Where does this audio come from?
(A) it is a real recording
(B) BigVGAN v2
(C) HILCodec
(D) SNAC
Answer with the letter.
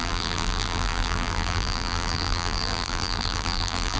B